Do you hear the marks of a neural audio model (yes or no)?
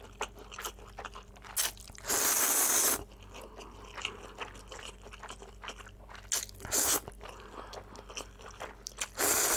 no